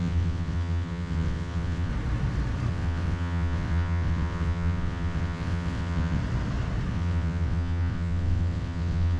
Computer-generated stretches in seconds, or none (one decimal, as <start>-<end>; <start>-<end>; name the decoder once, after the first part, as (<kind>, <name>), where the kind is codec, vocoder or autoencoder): 0.0-1.9 (vocoder, WaveNeXt); 2.7-6.2; 6.9-9.2